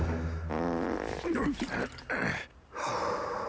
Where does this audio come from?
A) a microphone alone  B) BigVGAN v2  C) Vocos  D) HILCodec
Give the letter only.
A